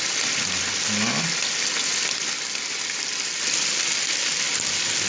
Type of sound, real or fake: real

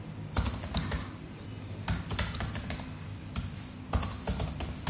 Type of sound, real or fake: real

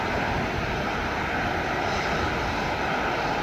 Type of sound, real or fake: real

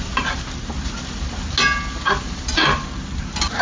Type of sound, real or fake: real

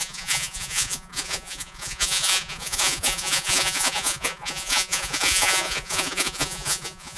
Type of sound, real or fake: fake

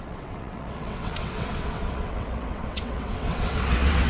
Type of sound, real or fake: fake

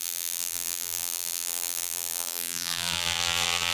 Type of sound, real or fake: fake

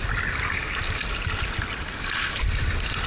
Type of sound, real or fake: real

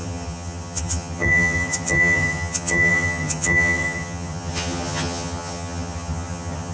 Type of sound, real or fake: fake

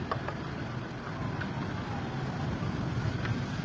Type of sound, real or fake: real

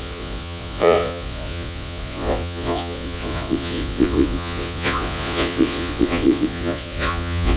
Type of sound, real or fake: fake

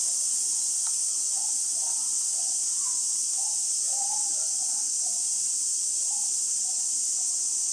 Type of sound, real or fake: real